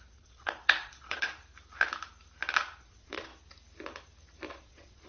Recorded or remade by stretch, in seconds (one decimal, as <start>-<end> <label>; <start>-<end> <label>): 0.0-1.4 remade; 1.4-2.8 recorded; 2.8-3.3 remade; 3.3-4.5 recorded; 4.5-5.1 remade